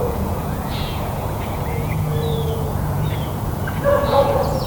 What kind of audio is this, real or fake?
fake